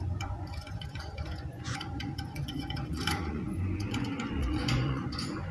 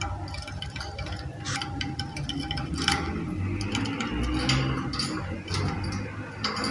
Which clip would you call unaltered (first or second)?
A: second